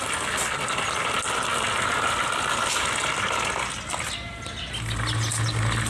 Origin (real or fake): real